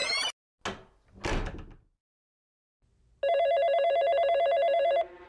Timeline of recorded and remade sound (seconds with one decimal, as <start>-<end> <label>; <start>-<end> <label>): 0.0-5.3 recorded